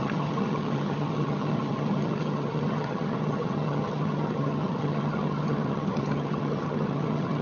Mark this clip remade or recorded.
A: remade